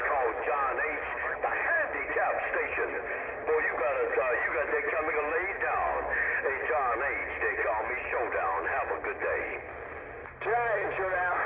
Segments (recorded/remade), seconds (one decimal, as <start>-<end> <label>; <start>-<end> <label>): 0.0-1.6 recorded; 1.6-3.8 remade; 3.8-4.9 recorded; 4.9-6.1 remade; 6.1-11.5 recorded

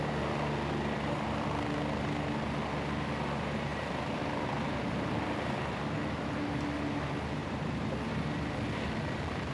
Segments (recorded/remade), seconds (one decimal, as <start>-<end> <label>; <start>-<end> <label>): 0.0-3.7 recorded; 3.7-5.8 remade; 5.8-7.4 recorded; 7.4-8.1 remade; 8.1-9.5 recorded

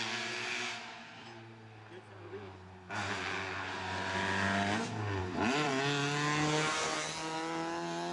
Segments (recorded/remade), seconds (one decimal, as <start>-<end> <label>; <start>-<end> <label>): 0.0-5.2 recorded; 5.2-5.7 remade; 5.7-8.1 recorded

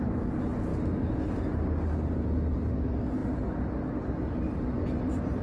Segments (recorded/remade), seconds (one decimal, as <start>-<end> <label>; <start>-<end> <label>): 0.0-5.4 recorded

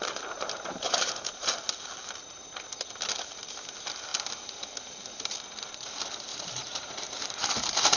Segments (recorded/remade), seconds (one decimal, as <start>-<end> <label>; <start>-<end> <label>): 0.0-1.6 remade; 1.6-6.3 recorded; 6.3-8.0 remade